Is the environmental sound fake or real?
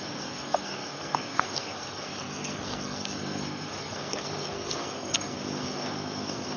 fake